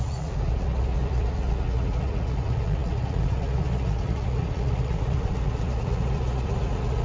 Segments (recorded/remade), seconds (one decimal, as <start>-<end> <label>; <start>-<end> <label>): 0.0-7.0 remade

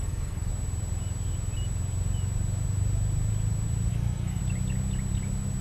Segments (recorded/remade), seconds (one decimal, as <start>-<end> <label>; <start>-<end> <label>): 0.0-0.5 remade; 0.5-3.9 recorded; 3.9-4.4 remade; 4.4-5.6 recorded